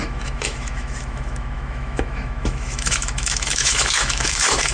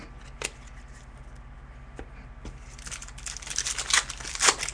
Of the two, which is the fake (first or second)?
first